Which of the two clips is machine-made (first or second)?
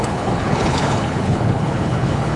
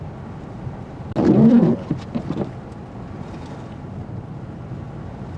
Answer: first